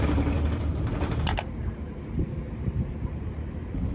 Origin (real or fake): fake